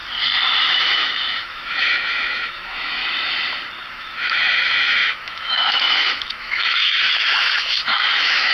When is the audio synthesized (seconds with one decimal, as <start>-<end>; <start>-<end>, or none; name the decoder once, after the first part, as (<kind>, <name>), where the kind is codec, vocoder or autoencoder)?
0.6-3.0 (autoencoder, DAC-VAE); 3.9-8.5